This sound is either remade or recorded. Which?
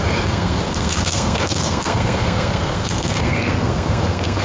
remade